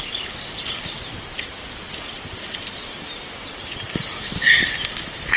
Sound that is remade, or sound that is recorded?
recorded